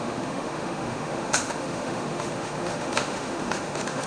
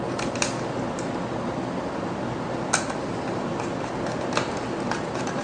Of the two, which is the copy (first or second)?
first